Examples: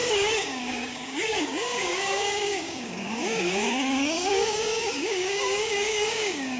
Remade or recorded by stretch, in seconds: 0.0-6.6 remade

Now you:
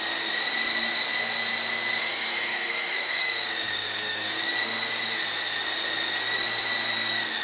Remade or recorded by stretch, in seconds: 0.0-2.0 recorded; 2.0-4.5 remade; 4.5-7.4 recorded

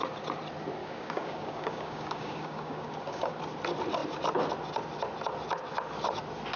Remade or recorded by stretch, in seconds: 0.0-0.8 recorded; 0.8-3.4 remade; 3.4-6.6 recorded

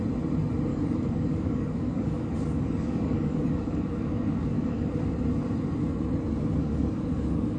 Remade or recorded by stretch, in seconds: 0.0-0.7 recorded; 0.7-4.9 remade; 4.9-6.6 recorded; 6.6-7.6 remade

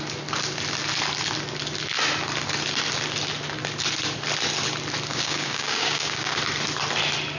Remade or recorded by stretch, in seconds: 0.0-5.1 recorded; 5.1-6.4 remade; 6.4-7.4 recorded

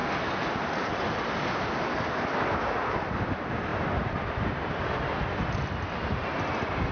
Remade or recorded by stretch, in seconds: 0.0-6.9 recorded

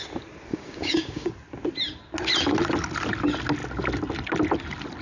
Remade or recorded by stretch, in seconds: 0.0-0.5 recorded; 0.5-1.3 remade; 1.3-5.0 recorded